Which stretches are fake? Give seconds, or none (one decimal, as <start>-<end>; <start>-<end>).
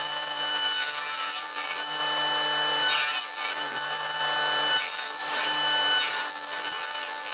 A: 0.0-2.0; 3.2-4.2; 4.8-5.2; 6.3-7.3